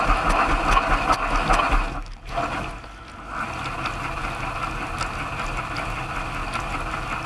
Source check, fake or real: real